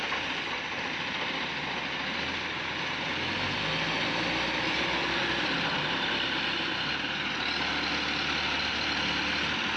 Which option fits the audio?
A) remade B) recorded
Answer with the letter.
B